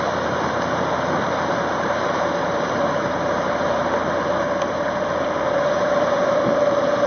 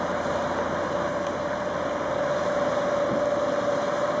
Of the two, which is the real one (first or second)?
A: second